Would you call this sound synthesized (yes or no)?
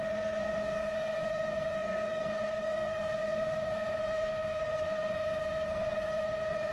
yes